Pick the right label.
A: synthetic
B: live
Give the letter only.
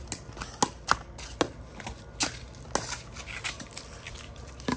B